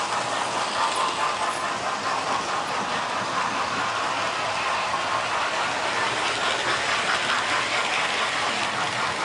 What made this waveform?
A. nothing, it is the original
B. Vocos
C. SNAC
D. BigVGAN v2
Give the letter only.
A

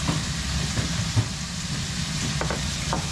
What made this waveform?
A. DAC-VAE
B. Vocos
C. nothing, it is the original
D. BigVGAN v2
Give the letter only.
C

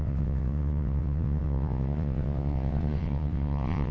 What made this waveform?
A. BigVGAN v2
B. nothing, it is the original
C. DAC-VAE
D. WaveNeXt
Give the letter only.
D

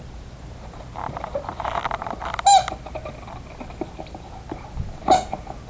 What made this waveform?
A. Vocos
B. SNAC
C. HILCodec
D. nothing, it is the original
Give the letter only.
D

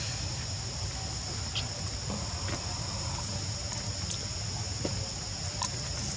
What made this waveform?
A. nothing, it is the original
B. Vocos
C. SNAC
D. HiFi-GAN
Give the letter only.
A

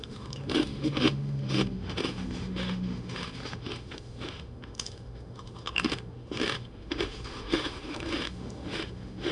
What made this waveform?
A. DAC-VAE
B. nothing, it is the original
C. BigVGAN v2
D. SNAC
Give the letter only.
A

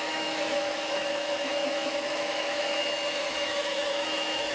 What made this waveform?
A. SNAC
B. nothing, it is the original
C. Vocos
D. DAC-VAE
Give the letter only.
D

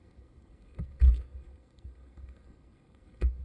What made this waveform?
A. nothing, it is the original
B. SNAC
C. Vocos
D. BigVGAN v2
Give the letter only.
B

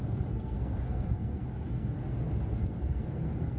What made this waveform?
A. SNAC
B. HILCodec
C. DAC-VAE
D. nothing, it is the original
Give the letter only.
A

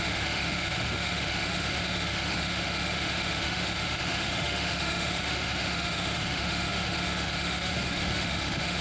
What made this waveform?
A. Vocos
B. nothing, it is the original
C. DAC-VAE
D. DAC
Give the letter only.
C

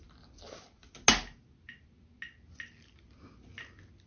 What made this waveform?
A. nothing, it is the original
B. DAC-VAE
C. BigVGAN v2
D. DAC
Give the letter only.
A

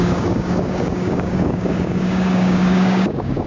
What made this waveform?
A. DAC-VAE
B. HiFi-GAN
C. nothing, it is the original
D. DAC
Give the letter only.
D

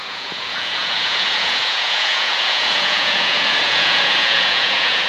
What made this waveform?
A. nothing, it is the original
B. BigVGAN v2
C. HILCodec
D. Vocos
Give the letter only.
D